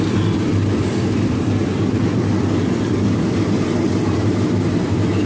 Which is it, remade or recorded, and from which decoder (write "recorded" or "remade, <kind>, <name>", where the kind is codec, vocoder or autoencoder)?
remade, vocoder, BigVGAN v2